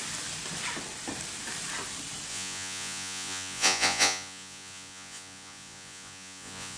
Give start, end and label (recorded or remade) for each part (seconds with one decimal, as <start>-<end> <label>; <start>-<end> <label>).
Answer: 0.0-2.3 recorded; 2.3-6.8 remade